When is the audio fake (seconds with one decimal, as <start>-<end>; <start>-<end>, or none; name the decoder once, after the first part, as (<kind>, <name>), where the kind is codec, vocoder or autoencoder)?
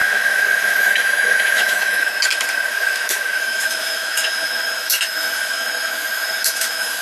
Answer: 0.0-2.1 (autoencoder, DAC-VAE); 2.7-7.0